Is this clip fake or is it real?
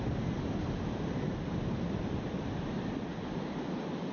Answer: real